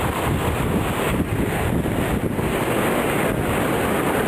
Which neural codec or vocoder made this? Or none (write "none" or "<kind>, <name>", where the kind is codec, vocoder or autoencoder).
none